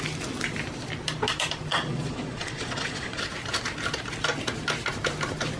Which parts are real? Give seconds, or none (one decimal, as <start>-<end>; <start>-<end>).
0.0-1.7; 3.2-5.6